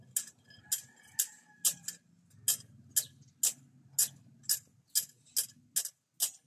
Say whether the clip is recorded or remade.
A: recorded